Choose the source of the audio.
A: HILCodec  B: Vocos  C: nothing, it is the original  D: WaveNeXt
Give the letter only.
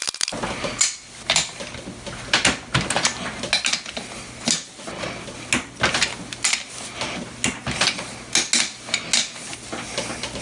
C